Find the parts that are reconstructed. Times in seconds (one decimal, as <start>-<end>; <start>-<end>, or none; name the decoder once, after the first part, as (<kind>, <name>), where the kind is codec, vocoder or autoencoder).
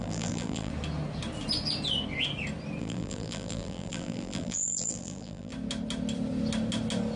0.0-0.7 (vocoder, BigVGAN v2); 2.8-5.5